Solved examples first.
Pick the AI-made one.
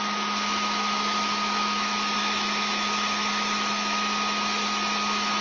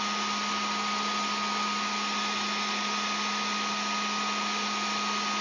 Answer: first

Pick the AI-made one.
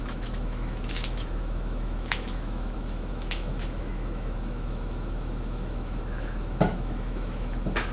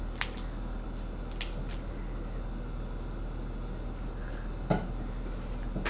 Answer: first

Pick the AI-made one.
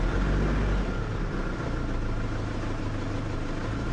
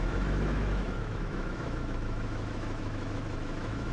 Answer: second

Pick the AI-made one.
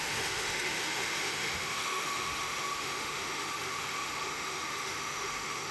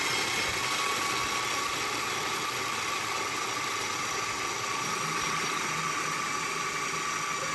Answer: first